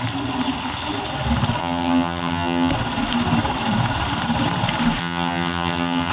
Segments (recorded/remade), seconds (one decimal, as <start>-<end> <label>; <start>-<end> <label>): 0.0-1.6 recorded; 1.6-2.7 remade; 2.7-5.0 recorded; 5.0-6.1 remade